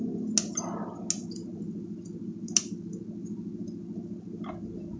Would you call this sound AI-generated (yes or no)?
no